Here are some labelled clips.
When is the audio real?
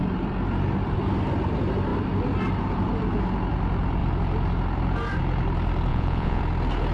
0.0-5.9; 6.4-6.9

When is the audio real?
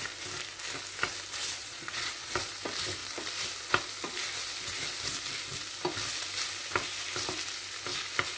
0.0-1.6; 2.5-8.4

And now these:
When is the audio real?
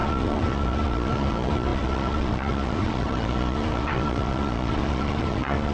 none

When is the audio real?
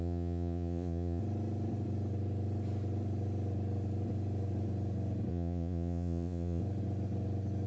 1.2-5.3; 6.6-7.7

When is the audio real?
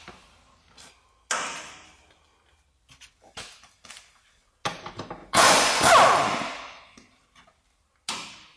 0.0-5.2; 5.9-8.6